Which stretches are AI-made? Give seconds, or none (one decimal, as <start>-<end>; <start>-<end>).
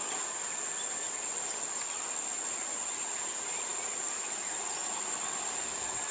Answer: none